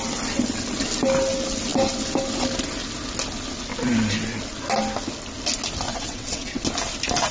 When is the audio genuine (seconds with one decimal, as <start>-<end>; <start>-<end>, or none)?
0.0-5.9; 6.6-7.3